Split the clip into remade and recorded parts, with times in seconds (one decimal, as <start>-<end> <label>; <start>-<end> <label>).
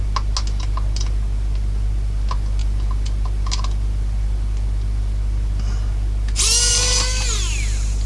0.0-8.1 recorded